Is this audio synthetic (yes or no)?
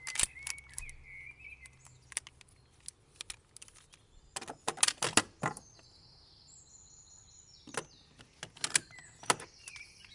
no